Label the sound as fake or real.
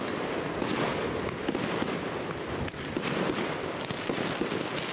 real